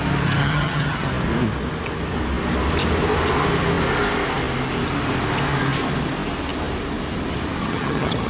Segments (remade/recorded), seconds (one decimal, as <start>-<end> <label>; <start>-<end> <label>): 0.0-0.4 recorded; 0.4-1.1 remade; 1.1-7.6 recorded; 7.6-8.3 remade